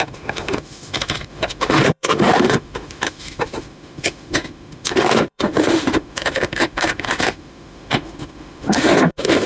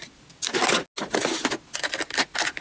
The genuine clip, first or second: second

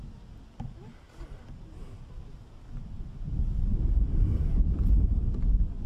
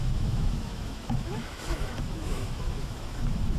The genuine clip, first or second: first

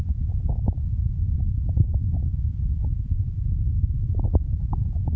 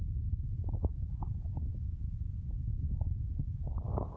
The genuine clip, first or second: second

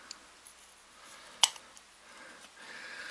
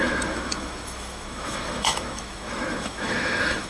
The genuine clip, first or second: first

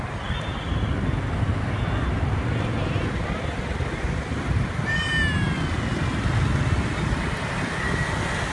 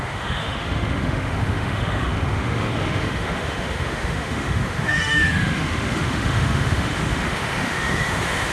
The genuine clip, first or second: first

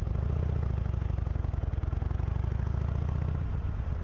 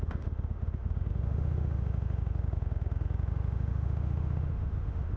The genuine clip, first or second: first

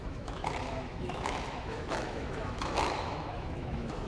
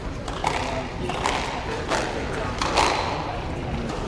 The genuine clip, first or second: second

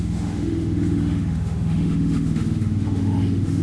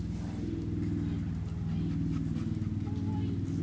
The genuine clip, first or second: second